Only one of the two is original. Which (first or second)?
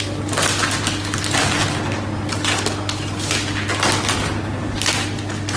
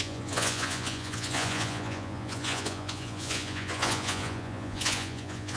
first